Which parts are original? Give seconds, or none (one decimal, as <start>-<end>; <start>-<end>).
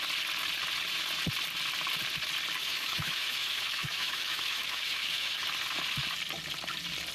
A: 0.0-2.6; 5.4-7.1